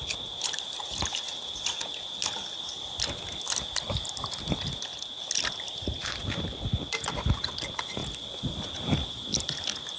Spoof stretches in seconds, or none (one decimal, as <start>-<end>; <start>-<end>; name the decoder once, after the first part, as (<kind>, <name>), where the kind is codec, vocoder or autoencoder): none